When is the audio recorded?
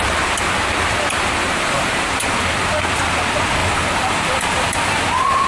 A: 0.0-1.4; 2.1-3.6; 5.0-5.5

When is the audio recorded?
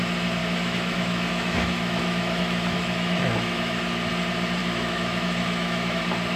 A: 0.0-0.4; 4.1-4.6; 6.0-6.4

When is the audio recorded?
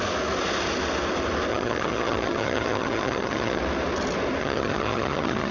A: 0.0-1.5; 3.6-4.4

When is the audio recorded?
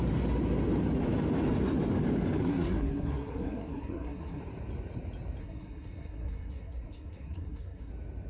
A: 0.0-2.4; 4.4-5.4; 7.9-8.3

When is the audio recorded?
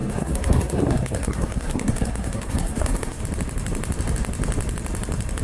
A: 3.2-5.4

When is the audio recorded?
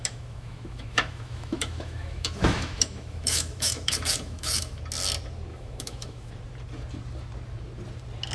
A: 4.8-5.5; 6.3-8.3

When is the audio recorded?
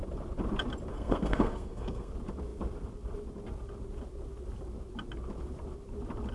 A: 0.0-0.9; 2.1-6.3